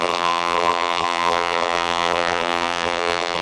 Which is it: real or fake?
fake